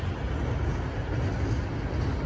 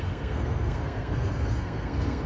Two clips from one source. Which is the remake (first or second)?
second